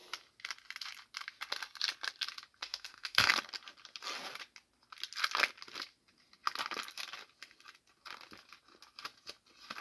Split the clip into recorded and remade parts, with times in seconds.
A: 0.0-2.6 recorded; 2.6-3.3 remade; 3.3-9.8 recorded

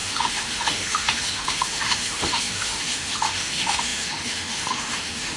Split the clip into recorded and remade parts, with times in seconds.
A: 0.0-5.4 remade

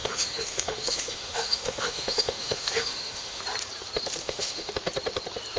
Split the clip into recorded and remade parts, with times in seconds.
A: 0.0-3.4 remade; 3.4-4.2 recorded; 4.2-4.7 remade; 4.7-5.6 recorded

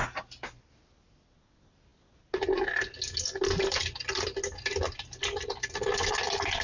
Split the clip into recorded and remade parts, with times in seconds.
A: 0.0-6.6 recorded

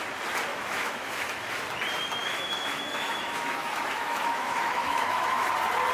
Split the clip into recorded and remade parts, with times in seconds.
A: 0.0-0.5 recorded; 0.5-1.5 remade; 1.5-2.2 recorded; 2.2-5.5 remade; 5.5-5.9 recorded